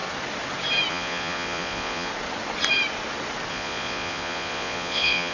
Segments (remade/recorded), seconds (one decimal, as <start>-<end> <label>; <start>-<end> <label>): 0.0-0.9 recorded; 0.9-2.1 remade; 2.1-3.5 recorded; 3.5-5.3 remade